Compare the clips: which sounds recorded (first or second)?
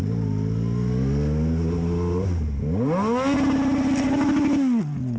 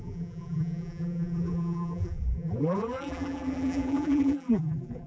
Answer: first